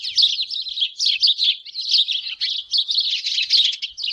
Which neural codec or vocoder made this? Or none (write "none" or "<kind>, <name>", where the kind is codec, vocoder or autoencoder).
none